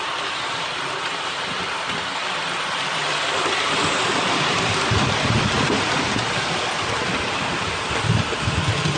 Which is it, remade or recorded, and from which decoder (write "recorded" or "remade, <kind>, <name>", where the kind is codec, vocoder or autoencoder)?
remade, vocoder, BigVGAN v2